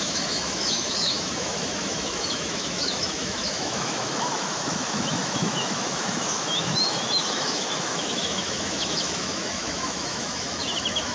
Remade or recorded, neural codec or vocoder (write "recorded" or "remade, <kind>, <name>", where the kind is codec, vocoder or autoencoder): remade, autoencoder, DAC-VAE